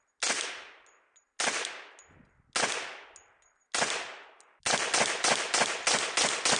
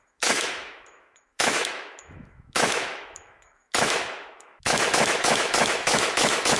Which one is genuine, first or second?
first